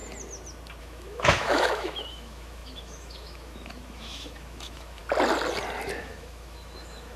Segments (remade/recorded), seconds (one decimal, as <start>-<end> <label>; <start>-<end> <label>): 0.0-0.8 recorded; 0.8-5.0 remade; 5.0-6.0 recorded; 6.0-7.2 remade